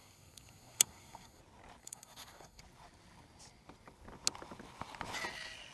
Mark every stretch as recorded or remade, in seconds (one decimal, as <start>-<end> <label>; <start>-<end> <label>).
0.0-1.4 remade; 1.4-1.8 recorded; 1.8-2.6 remade; 2.6-5.7 recorded